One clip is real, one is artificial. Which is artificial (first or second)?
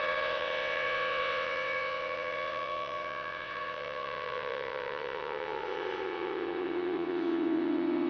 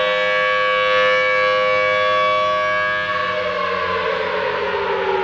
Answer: first